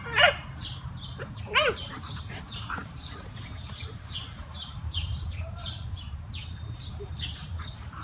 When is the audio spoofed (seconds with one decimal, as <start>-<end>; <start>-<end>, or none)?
0.0-0.4; 1.9-8.0